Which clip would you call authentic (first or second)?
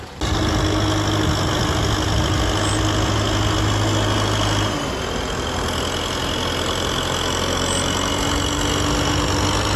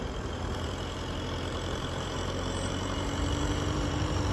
first